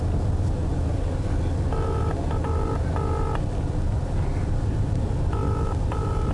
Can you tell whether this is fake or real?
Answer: real